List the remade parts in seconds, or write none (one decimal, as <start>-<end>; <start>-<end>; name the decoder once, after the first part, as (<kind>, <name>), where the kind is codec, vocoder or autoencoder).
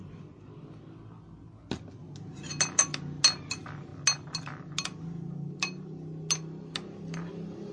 none